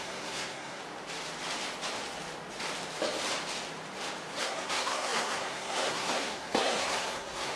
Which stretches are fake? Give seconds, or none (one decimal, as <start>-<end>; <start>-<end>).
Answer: 0.0-0.8; 4.4-7.6